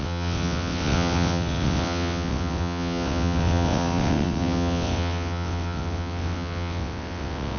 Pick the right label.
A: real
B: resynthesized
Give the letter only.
B